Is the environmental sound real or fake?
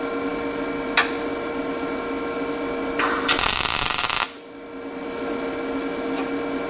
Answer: real